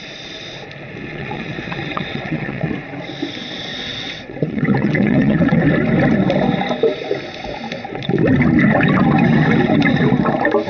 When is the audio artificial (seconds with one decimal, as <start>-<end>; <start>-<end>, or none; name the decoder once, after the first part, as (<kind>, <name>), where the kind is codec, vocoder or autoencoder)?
1.1-2.7 (vocoder, WaveNeXt); 3.7-5.6